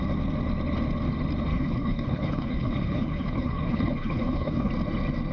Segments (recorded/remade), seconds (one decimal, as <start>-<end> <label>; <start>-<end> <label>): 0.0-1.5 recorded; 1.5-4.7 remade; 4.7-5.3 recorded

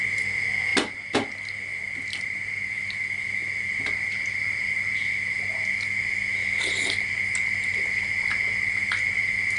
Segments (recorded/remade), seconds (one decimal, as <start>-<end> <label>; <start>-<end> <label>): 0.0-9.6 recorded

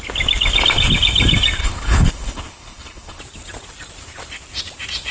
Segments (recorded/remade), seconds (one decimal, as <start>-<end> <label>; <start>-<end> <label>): 0.0-1.6 recorded; 1.6-3.2 remade; 3.2-5.1 recorded